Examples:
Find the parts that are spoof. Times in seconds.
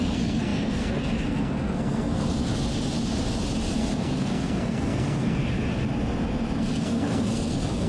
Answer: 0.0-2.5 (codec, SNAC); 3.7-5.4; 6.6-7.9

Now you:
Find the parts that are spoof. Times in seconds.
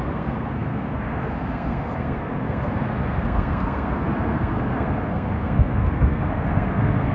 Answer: 0.0-7.1 (codec, SNAC)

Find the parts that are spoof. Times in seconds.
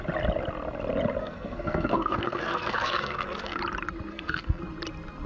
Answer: 1.2-3.6 (codec, SNAC); 4.1-4.6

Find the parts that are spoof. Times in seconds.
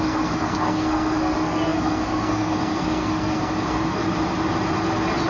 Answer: 0.0-4.0 (codec, SNAC)